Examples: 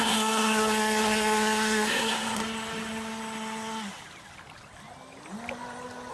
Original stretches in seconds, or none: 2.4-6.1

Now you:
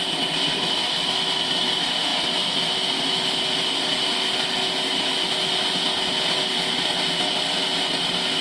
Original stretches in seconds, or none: 0.0-8.4

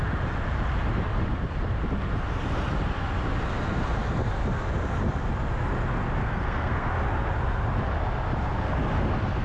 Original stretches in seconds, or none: 0.0-6.2; 6.9-9.4

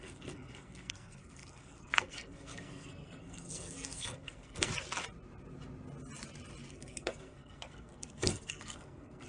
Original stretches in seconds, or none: 4.7-6.7

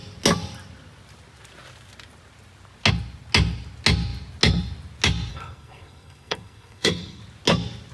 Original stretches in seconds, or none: 0.0-5.3; 7.2-7.9

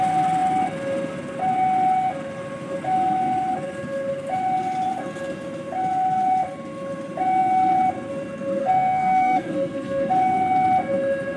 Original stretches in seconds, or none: 0.0-8.6; 10.1-11.4